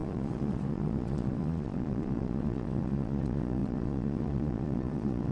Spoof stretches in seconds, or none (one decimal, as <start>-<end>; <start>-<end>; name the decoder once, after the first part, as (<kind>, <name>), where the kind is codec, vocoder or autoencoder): 0.0-5.3 (vocoder, Vocos)